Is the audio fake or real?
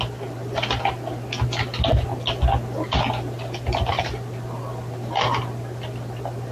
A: real